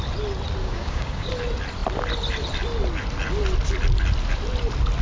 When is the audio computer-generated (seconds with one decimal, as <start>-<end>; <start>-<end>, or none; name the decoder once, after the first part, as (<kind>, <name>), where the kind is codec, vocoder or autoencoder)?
0.6-1.3 (codec, DAC)

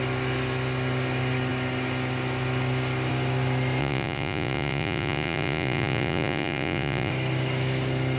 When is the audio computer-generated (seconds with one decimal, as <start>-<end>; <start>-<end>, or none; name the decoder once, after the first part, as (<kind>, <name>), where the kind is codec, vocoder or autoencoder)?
3.8-7.1 (vocoder, Vocos)